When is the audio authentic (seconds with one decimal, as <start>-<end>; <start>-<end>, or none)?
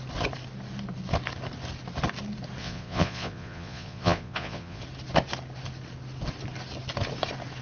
0.0-2.6; 4.8-7.6